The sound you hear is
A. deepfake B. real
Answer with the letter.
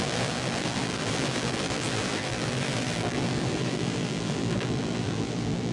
A